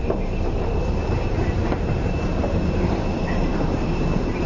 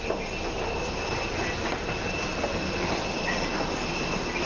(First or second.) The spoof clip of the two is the first